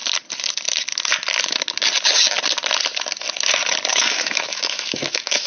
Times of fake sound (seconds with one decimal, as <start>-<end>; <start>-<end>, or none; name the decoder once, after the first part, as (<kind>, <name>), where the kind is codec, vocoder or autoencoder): 3.9-5.5 (autoencoder, DAC-VAE)